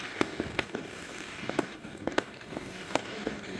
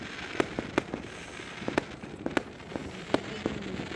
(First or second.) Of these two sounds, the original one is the second